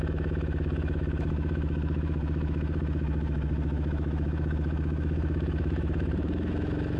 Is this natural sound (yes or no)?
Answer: no